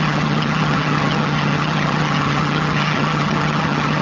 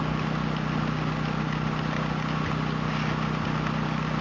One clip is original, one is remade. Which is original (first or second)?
second